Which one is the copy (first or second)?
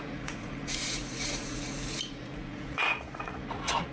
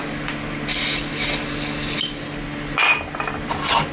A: first